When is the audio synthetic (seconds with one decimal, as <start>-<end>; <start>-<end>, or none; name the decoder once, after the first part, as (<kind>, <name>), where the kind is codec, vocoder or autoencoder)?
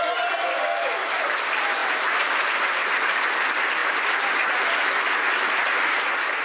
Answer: 1.8-2.6 (vocoder, BigVGAN v2); 3.8-4.7